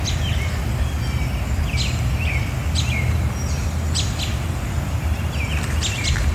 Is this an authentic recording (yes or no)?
yes